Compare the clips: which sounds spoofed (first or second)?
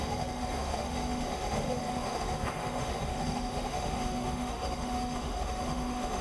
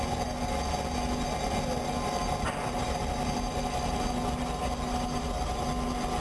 first